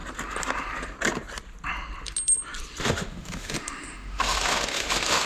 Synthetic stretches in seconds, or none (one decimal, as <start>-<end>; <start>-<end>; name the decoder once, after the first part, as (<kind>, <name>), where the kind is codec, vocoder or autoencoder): 2.8-5.3 (autoencoder, DAC-VAE)